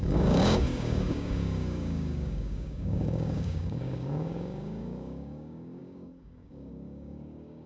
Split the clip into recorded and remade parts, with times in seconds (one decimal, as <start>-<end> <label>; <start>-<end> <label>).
0.0-7.7 remade